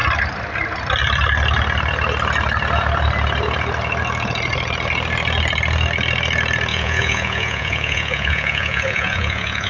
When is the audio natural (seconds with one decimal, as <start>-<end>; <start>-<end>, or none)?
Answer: 0.0-6.7